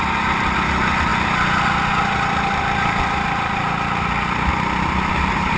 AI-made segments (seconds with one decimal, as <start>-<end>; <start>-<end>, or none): none

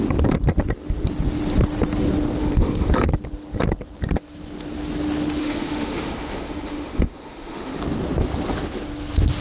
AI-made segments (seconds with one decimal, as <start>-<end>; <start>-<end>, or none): 2.4-2.9; 5.4-7.8

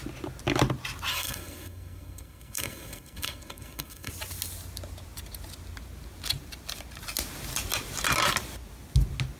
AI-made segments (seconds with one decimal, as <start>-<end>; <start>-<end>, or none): 1.1-4.1

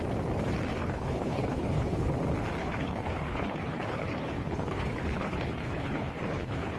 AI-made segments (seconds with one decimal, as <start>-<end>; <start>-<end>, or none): 0.8-2.1; 2.6-6.8

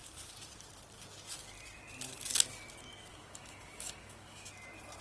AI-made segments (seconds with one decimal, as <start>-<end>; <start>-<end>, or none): 3.1-4.5

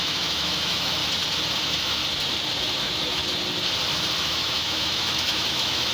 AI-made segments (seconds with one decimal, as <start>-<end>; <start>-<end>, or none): 0.0-1.0; 1.6-2.0; 2.6-3.2; 4.2-5.9